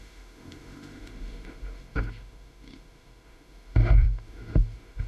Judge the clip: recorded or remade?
remade